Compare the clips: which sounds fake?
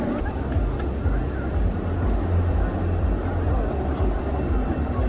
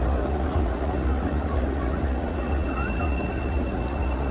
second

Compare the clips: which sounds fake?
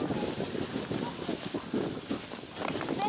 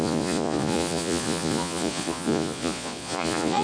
second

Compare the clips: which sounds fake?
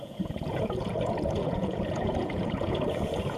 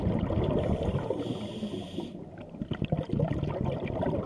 first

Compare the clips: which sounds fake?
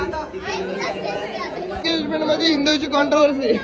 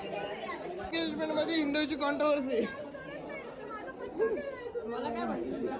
first